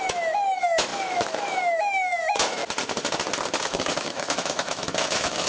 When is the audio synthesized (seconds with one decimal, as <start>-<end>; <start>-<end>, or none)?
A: 0.0-2.6; 3.6-5.5

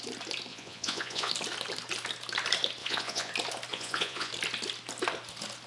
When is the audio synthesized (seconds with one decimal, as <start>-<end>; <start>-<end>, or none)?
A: 0.5-1.3; 2.8-3.3; 3.7-4.3

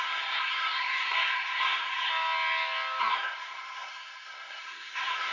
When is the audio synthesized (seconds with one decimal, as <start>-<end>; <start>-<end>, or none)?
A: 0.0-2.1; 3.0-5.3

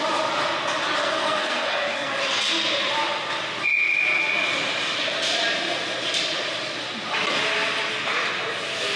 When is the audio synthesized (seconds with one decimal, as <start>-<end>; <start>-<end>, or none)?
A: 1.0-2.1

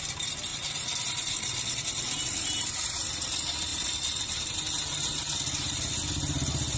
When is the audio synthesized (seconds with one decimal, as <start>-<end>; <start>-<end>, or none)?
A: none